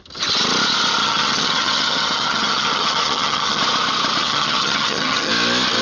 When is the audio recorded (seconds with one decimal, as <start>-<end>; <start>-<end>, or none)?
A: 0.0-1.0; 3.6-4.2; 5.3-5.8